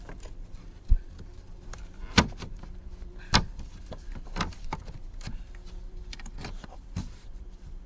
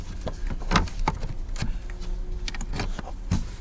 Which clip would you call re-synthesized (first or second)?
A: first